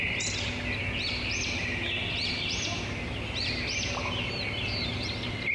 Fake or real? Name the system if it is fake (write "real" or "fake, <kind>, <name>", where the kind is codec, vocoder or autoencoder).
real